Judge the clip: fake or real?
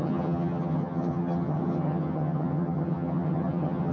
fake